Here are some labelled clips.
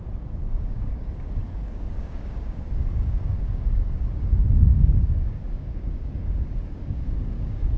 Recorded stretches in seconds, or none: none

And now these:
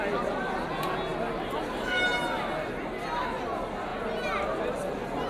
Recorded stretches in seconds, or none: 0.0-5.3